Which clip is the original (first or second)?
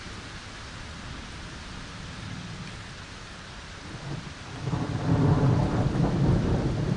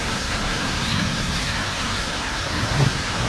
first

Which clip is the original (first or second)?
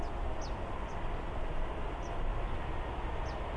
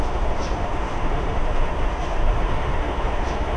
first